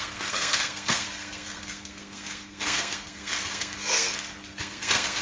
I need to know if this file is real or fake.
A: fake